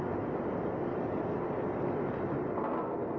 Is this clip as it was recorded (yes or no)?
yes